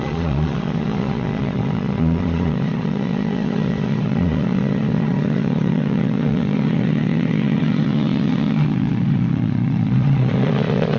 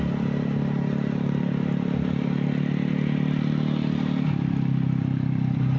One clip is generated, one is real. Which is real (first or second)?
second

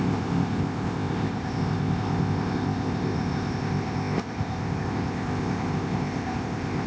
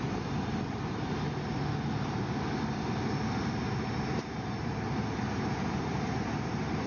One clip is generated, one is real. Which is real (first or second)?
second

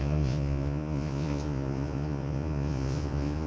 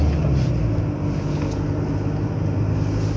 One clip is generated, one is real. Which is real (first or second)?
second